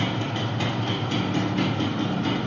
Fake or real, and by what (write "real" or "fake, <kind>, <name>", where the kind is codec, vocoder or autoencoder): real